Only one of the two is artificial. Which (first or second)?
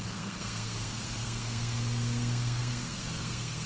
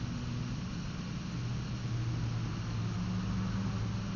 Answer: first